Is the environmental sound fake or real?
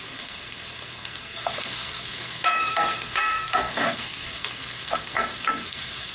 fake